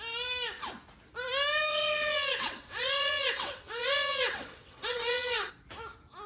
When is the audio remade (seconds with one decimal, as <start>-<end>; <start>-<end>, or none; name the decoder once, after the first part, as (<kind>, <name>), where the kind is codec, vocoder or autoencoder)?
1.7-5.5 (vocoder, WaveNeXt)